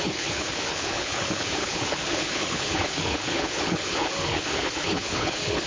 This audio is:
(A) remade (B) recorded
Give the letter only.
A